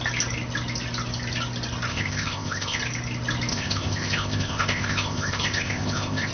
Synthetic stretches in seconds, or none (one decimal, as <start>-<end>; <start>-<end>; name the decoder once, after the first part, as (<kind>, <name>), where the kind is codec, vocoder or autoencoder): 1.9-2.8 (codec, ZipCodec); 3.5-6.3